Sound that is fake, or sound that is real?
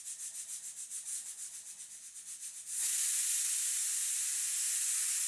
real